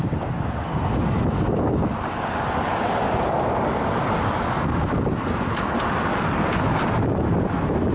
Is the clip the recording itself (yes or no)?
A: yes